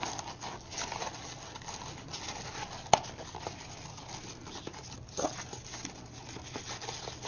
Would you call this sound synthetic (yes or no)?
no